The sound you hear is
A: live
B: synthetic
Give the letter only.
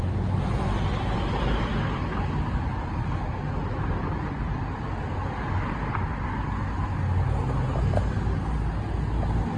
A